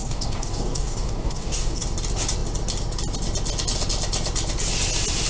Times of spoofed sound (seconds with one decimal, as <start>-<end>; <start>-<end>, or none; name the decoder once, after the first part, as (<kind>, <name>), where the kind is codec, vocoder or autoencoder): 0.0-1.8 (codec, DAC)